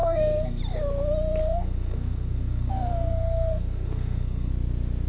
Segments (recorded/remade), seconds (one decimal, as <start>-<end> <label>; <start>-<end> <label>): 0.0-0.6 remade; 0.6-1.4 recorded; 1.4-4.5 remade; 4.5-5.1 recorded